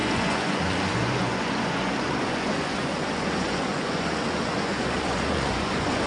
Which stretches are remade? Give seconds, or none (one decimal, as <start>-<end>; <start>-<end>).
0.0-6.1